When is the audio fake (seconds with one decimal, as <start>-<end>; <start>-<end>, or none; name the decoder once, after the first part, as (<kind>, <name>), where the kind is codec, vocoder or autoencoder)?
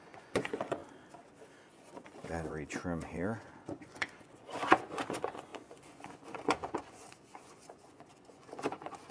0.0-0.8 (vocoder, Vocos); 1.7-9.1